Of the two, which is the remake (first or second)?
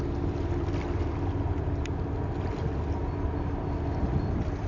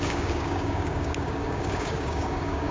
second